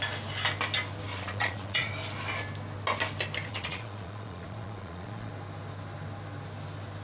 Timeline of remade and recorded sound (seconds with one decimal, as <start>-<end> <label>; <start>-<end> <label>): 0.0-1.1 recorded; 1.1-1.9 remade; 1.9-3.5 recorded; 3.5-5.3 remade; 5.3-7.0 recorded